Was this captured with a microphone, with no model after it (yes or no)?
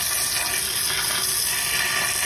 yes